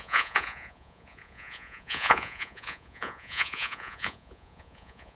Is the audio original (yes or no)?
no